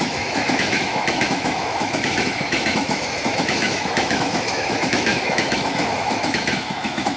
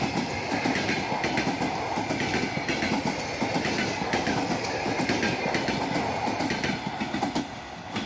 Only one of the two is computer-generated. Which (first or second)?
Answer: first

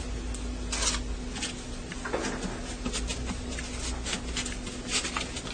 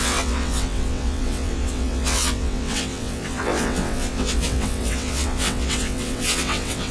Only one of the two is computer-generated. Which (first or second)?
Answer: second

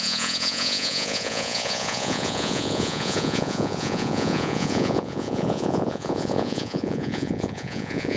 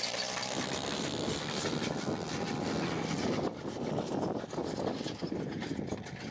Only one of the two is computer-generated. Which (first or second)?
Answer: first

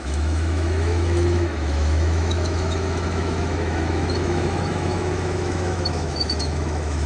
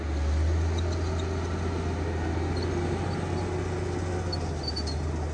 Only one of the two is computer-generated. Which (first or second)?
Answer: first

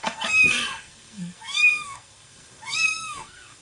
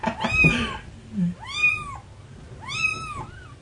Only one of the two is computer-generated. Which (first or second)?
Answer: first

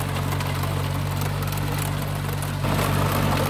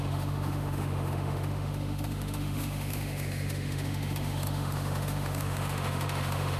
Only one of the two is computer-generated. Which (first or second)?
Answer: second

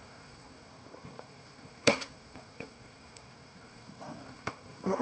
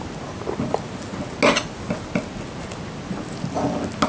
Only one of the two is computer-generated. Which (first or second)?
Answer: first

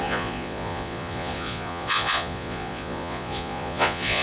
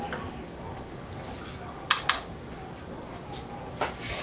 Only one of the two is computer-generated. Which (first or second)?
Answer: first